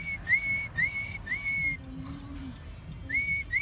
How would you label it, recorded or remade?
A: recorded